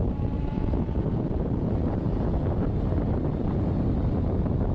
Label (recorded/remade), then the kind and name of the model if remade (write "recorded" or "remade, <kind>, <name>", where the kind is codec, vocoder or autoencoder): remade, vocoder, BigVGAN v2